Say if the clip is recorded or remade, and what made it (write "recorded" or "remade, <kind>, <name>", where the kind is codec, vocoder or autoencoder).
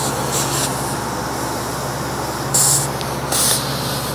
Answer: recorded